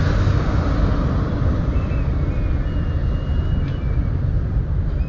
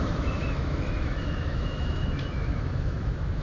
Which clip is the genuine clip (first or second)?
first